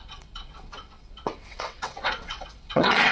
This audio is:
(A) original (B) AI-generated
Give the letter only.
B